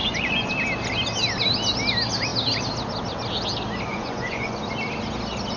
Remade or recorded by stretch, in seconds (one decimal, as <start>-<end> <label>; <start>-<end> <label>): 0.0-0.5 remade; 0.5-3.9 recorded; 3.9-4.6 remade; 4.6-5.6 recorded